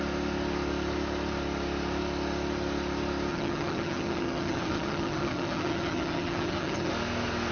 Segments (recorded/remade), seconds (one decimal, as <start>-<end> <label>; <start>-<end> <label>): 0.0-3.3 recorded; 3.3-6.9 remade; 6.9-7.5 recorded